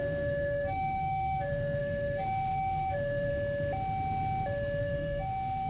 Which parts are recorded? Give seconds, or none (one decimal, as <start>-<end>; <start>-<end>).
3.3-4.8